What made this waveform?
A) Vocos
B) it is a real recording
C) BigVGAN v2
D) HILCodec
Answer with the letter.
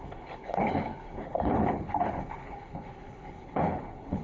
D